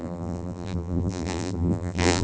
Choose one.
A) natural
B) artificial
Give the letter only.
B